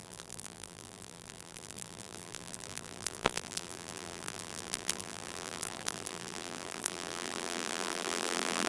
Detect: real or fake fake